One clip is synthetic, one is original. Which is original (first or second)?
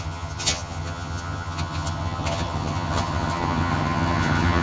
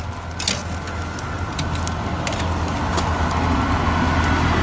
second